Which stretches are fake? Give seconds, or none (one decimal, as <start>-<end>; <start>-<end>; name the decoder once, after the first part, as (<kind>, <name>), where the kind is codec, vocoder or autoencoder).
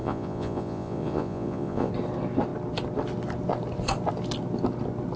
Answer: 0.0-1.9 (vocoder, Vocos)